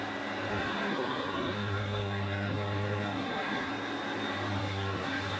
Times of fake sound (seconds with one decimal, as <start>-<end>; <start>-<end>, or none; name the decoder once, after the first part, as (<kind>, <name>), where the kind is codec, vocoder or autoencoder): 0.5-3.7 (codec, SNAC); 4.6-5.4